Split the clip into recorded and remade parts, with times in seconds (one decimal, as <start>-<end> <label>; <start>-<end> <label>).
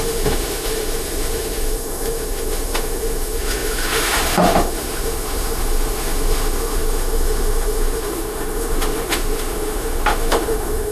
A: 0.0-10.9 remade